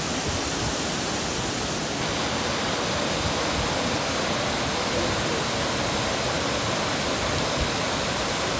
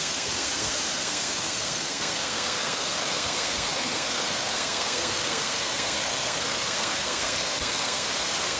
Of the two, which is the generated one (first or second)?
second